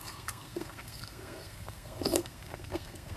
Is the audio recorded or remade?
remade